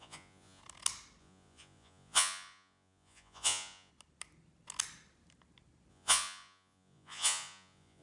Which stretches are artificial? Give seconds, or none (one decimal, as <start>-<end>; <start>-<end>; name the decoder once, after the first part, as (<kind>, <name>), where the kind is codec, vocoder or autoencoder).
0.0-0.6 (vocoder, Vocos); 1.2-3.9; 5.9-8.0